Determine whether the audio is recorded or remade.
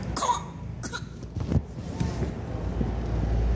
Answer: recorded